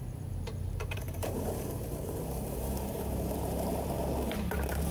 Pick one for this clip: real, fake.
fake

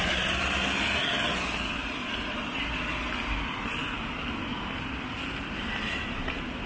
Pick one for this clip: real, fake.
real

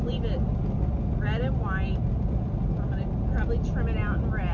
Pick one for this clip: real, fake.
real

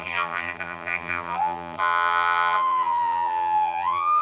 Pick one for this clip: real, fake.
fake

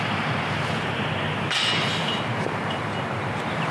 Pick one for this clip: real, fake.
fake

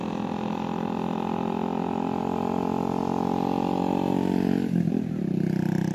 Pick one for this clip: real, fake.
real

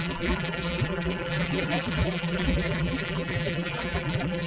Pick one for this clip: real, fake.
fake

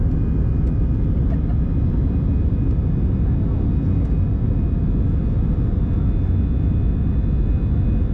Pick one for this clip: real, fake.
real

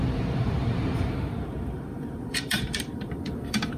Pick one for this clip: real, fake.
fake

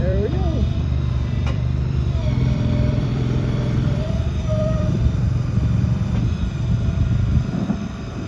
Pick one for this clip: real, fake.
fake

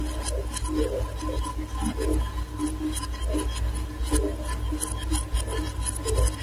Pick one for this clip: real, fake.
real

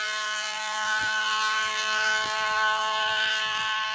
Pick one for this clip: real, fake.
fake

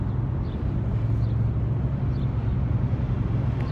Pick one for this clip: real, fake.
real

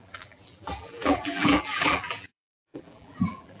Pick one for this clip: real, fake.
fake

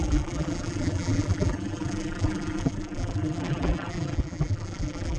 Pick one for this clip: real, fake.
fake